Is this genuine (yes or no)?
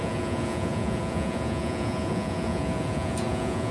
no